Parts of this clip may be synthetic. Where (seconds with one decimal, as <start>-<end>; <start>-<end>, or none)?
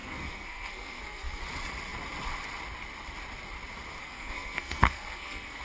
0.0-1.4; 4.0-5.6